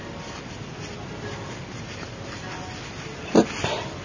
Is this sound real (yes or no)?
no